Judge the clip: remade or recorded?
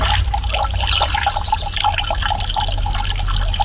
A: recorded